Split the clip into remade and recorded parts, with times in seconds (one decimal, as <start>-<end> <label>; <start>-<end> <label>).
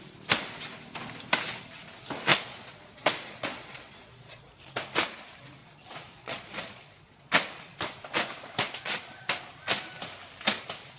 0.0-2.3 recorded; 2.3-4.4 remade; 4.4-5.6 recorded; 5.6-7.2 remade; 7.2-11.0 recorded